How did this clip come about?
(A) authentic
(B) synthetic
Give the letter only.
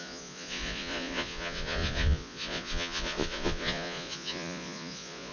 B